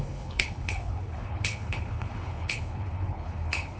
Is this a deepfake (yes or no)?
yes